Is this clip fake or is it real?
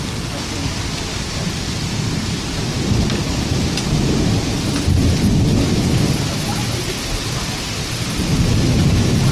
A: real